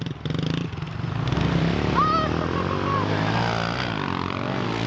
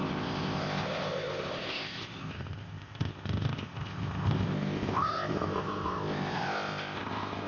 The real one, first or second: first